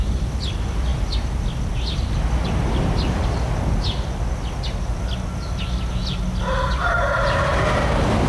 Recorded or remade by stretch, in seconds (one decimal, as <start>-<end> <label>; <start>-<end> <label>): 0.0-8.3 recorded